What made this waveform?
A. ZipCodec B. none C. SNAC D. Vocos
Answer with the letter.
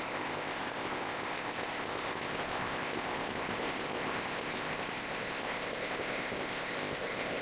A